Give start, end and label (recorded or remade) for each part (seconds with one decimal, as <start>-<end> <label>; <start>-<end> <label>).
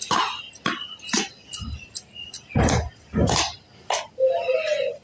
0.0-5.0 recorded